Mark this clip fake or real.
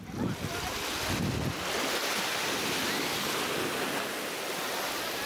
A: real